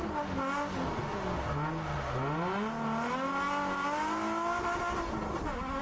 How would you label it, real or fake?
real